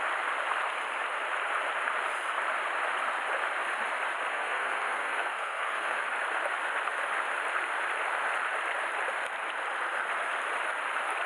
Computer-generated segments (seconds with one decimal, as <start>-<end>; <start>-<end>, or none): 4.3-6.0